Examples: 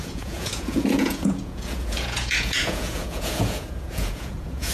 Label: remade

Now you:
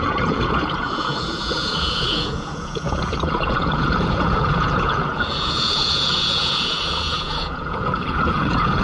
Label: remade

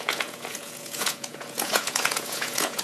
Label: remade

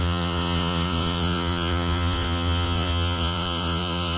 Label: remade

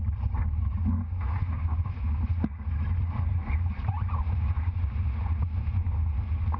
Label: recorded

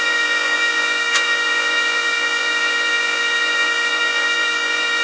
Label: remade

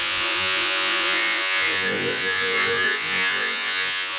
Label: remade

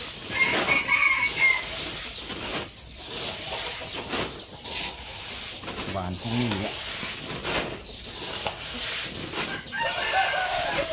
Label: recorded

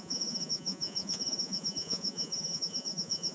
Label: remade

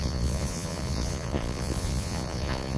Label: remade